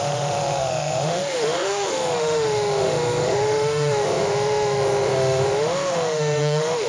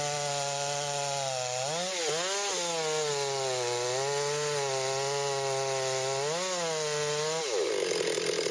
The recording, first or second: second